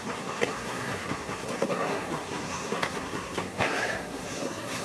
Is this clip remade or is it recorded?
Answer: remade